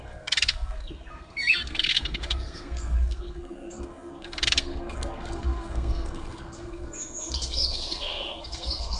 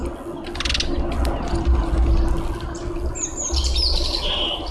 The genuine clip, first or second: second